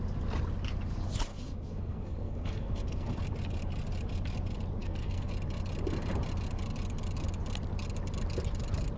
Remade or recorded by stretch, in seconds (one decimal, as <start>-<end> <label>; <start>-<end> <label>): 0.0-1.3 recorded; 1.3-3.2 remade; 3.2-4.8 recorded; 4.8-5.3 remade; 5.3-9.0 recorded